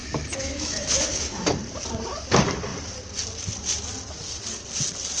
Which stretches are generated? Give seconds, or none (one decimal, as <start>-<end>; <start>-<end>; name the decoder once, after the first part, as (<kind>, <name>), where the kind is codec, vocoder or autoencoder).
0.0-1.5 (autoencoder, DAC-VAE)